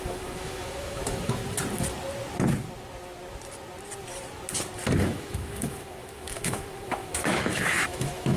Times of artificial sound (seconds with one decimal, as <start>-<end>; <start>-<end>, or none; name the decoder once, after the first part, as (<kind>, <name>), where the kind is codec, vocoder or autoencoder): 0.0-1.4 (autoencoder, DAC-VAE); 5.0-8.4